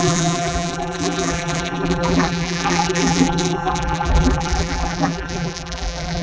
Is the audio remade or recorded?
remade